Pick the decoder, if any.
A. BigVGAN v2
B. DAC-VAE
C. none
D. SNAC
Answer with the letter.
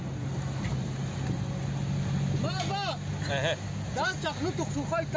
C